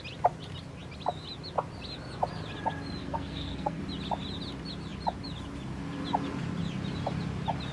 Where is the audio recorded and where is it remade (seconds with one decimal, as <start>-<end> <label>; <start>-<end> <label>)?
0.0-3.0 recorded; 3.0-3.8 remade; 3.8-7.7 recorded